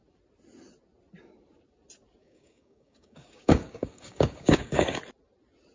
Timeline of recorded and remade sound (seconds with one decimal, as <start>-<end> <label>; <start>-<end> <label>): 0.0-2.2 recorded; 2.2-5.0 remade; 5.0-5.7 recorded